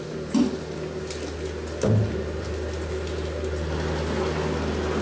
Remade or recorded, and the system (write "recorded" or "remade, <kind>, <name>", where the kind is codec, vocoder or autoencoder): recorded